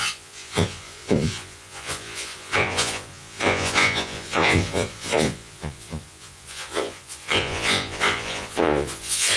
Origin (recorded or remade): remade